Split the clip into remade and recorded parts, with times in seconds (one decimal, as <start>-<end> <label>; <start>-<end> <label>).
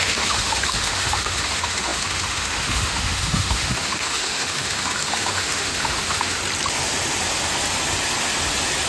0.0-6.4 remade; 6.4-8.9 recorded